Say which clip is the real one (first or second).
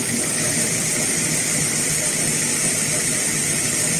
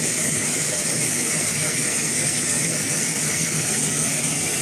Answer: first